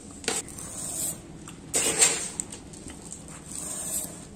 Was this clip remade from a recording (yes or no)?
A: no